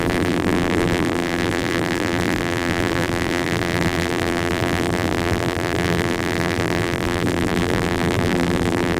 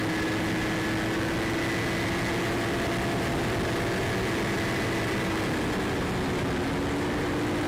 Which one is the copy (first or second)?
first